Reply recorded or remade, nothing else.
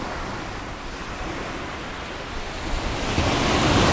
recorded